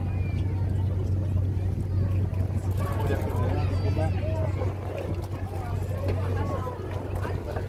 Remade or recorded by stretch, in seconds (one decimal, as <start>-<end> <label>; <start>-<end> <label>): 0.0-7.7 recorded